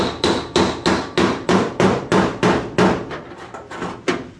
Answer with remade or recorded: recorded